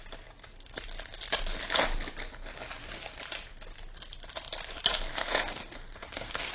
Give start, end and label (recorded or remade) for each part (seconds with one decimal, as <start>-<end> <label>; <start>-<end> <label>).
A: 0.0-5.1 recorded; 5.1-6.5 remade